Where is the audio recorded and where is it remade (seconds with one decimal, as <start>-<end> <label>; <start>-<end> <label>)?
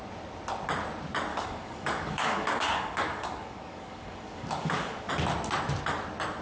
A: 0.0-1.3 recorded; 1.3-5.1 remade; 5.1-6.4 recorded